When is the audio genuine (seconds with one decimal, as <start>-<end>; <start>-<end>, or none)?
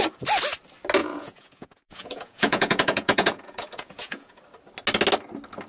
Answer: 0.0-1.0; 4.4-5.7